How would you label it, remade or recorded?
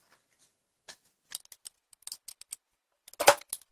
recorded